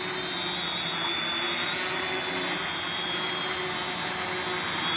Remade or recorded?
recorded